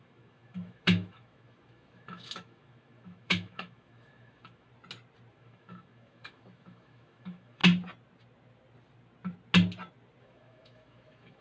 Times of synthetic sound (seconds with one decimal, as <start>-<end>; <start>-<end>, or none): 0.0-4.7; 5.3-7.6; 10.2-11.4